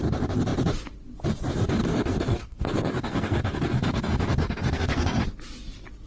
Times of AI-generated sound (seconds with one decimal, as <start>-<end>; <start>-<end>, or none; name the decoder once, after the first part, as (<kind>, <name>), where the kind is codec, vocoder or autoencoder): 1.8-5.2 (codec, SNAC)